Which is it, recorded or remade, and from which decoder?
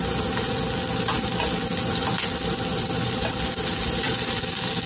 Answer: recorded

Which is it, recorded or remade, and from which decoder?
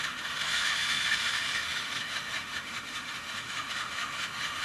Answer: remade, autoencoder, DAC-VAE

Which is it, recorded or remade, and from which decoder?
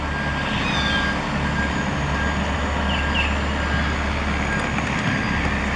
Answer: recorded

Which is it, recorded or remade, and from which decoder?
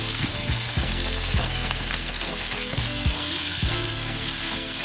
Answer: remade, codec, SNAC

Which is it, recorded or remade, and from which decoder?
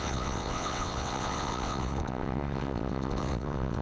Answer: remade, vocoder, WaveNeXt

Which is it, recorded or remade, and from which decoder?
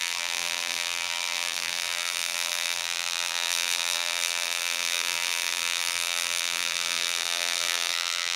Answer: remade, vocoder, BigVGAN v2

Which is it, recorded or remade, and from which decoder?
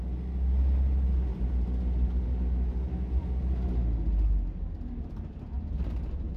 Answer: recorded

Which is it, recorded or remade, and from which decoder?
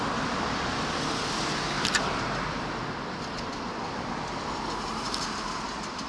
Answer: recorded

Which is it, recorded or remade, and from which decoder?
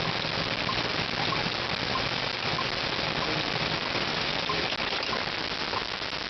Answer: recorded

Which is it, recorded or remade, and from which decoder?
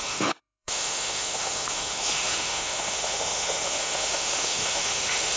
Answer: remade, autoencoder, DAC-VAE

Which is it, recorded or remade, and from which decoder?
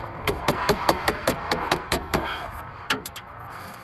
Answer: remade, codec, SNAC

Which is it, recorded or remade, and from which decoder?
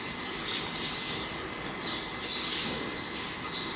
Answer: recorded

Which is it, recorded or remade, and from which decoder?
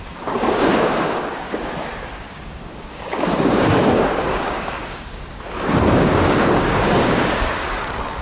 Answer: remade, codec, DAC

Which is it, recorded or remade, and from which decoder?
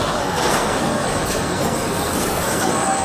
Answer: remade, codec, SNAC